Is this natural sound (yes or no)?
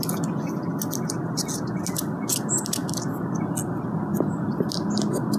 yes